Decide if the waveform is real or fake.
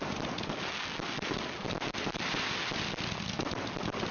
real